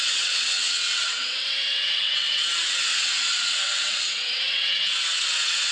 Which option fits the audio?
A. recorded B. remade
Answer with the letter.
B